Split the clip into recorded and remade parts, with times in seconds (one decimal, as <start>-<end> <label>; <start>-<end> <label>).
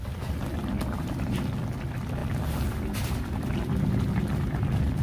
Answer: 0.0-5.0 recorded